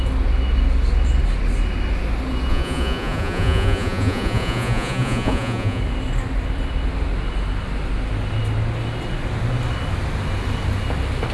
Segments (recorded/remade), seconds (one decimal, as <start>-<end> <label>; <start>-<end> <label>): 0.0-2.5 recorded; 2.5-5.8 remade; 5.8-11.3 recorded